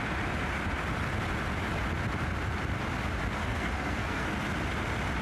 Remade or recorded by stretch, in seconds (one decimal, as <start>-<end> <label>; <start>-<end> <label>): 0.0-3.4 recorded; 3.4-4.3 remade; 4.3-5.2 recorded